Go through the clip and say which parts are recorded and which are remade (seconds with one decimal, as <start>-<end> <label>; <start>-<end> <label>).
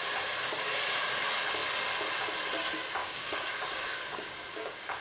0.0-3.0 recorded; 3.0-5.0 remade